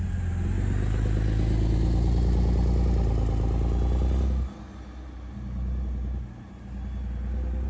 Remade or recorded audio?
recorded